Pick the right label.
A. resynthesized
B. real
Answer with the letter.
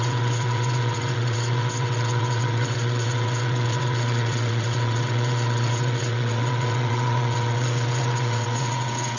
A